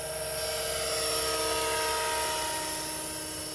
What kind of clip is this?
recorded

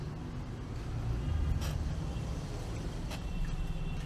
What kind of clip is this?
recorded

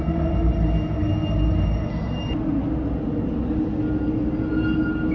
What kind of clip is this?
recorded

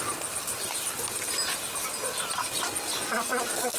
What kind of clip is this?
recorded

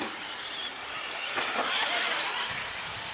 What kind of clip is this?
recorded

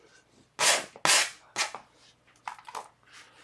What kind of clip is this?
recorded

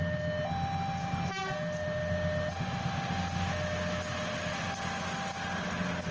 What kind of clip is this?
recorded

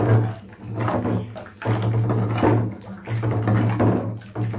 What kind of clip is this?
recorded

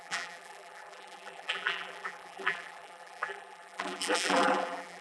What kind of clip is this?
remade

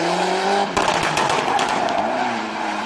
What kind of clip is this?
remade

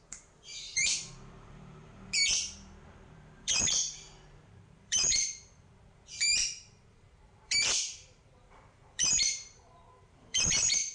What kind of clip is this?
remade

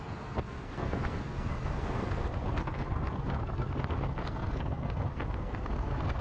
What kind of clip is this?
remade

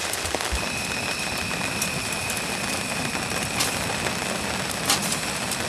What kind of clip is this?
recorded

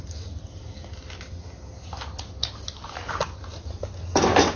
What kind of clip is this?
recorded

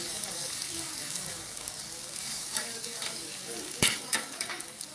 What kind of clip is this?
remade